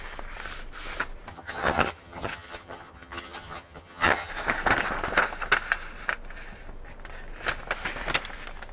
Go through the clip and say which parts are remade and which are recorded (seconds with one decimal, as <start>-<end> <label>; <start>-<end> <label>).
0.0-1.3 recorded; 1.3-4.3 remade; 4.3-8.7 recorded